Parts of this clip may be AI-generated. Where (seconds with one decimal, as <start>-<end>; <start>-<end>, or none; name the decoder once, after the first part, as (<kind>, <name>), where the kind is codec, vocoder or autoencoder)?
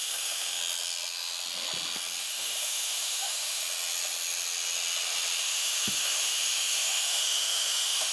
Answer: 0.0-0.6 (autoencoder, DAC-VAE); 2.2-3.6; 5.4-8.1